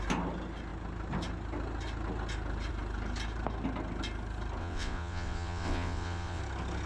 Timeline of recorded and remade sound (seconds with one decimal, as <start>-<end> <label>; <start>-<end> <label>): 0.0-4.6 recorded; 4.6-6.4 remade; 6.4-6.9 recorded